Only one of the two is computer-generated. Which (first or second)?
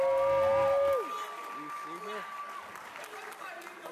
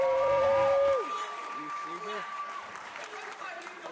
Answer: second